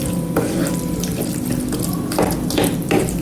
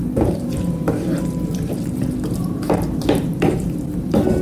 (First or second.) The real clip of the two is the first